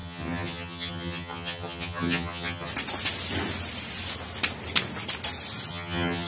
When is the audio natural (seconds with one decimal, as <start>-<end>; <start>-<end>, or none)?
2.7-5.7